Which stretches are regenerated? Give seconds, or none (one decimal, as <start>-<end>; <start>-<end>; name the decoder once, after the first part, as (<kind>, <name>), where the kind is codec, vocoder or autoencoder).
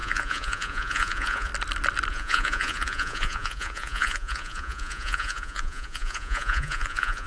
0.0-1.5 (vocoder, Vocos); 2.1-7.3